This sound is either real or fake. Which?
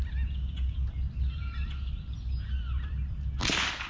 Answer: real